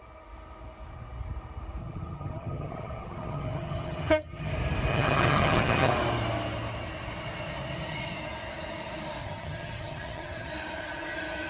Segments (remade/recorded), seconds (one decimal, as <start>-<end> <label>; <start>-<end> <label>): 0.0-1.8 recorded; 1.8-4.5 remade; 4.5-4.9 recorded; 4.9-5.9 remade; 5.9-9.2 recorded; 9.2-10.5 remade; 10.5-11.5 recorded